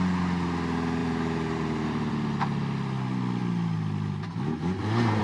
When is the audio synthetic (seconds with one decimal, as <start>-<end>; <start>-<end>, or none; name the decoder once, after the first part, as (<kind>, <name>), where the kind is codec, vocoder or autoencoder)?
1.0-2.1 (vocoder, BigVGAN v2)